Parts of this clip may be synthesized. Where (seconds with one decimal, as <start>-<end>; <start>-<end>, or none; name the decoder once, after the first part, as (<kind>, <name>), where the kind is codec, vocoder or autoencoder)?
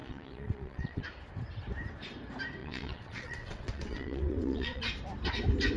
0.0-1.0 (vocoder, WaveNeXt); 2.6-4.8